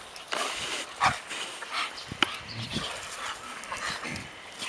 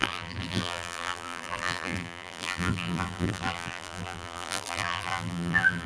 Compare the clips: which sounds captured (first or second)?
first